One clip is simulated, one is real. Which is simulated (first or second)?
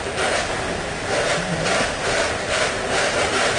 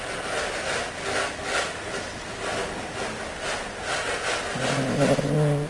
first